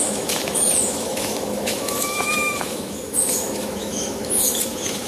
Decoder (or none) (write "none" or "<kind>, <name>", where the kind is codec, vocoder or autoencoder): autoencoder, DAC-VAE